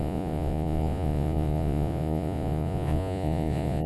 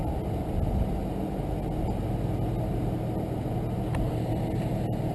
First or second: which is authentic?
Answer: second